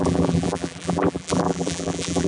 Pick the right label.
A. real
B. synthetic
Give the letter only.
B